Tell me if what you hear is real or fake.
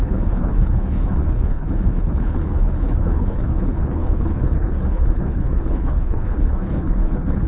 fake